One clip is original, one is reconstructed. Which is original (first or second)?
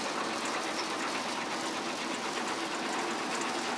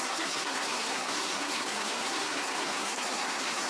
first